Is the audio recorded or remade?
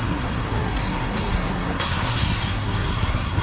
remade